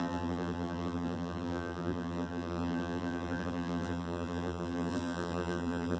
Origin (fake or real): fake